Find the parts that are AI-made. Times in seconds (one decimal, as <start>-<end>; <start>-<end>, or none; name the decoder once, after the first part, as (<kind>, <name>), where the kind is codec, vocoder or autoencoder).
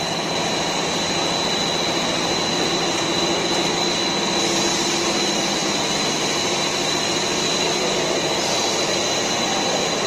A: none